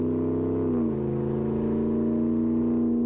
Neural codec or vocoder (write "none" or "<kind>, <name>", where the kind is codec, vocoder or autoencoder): none